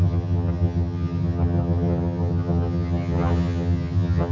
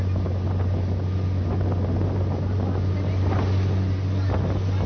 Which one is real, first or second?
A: second